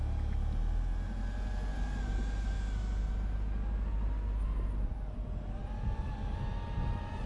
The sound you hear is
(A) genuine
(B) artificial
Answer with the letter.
A